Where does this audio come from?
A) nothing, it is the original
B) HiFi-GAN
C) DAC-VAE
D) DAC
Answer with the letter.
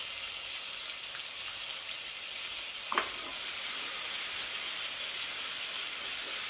A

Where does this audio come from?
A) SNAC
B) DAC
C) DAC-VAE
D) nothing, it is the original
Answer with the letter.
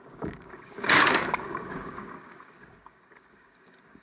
B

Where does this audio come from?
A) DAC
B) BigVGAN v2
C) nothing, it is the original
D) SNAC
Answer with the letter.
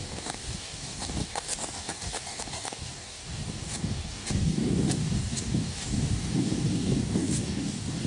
A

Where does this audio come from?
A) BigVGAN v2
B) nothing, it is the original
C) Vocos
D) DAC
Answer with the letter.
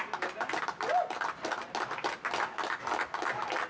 B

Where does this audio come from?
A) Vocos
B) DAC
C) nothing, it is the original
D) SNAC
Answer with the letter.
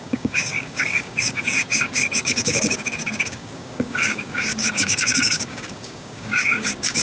B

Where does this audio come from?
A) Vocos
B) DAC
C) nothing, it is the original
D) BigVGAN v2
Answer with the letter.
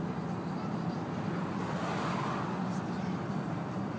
C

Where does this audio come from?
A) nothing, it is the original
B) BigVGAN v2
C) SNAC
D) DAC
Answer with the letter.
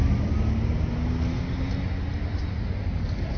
A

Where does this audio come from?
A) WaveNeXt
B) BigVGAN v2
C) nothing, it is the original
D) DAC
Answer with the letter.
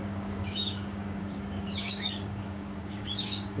D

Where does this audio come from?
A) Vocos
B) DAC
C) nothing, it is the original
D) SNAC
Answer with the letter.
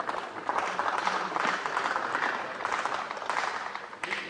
C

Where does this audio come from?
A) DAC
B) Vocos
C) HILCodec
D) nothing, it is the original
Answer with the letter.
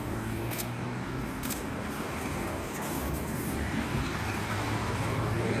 A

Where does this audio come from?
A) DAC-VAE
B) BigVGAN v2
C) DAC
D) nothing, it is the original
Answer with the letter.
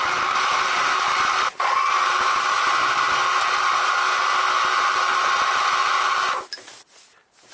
D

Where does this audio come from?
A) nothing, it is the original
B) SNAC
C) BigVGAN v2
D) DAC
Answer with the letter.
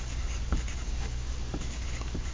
D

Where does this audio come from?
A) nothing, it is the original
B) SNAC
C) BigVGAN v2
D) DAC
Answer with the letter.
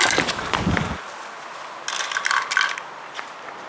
A